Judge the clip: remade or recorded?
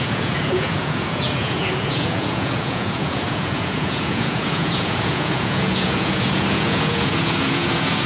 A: remade